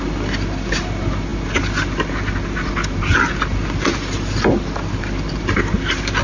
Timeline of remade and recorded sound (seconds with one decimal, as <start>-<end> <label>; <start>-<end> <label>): 0.0-6.2 recorded